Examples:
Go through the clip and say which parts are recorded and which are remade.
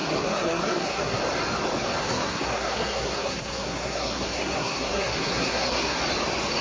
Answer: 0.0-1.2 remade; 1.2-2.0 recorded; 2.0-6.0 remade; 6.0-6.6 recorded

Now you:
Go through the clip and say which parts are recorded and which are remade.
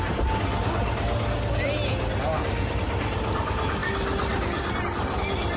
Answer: 0.0-5.6 recorded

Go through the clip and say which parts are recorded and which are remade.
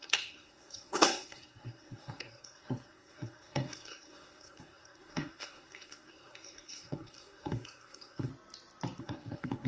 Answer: 0.0-8.3 remade; 8.3-9.0 recorded; 9.0-9.7 remade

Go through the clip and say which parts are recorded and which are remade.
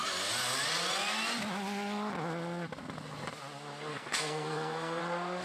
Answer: 0.0-3.9 recorded; 3.9-5.0 remade; 5.0-5.4 recorded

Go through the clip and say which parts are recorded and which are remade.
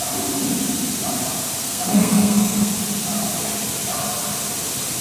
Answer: 0.0-1.6 recorded; 1.6-2.7 remade; 2.7-5.0 recorded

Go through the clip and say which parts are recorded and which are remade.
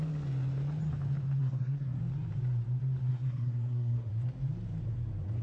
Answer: 0.0-1.4 recorded; 1.4-2.0 remade; 2.0-3.1 recorded; 3.1-4.1 remade; 4.1-5.4 recorded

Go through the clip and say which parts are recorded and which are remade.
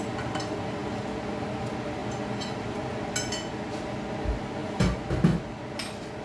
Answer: 0.0-6.2 recorded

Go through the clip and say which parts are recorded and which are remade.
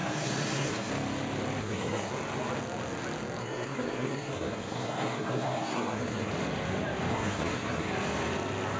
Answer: 0.0-0.9 remade; 0.9-1.6 recorded; 1.6-2.1 remade; 2.1-3.4 recorded; 3.4-6.3 remade; 6.3-7.1 recorded; 7.1-7.9 remade; 7.9-8.8 recorded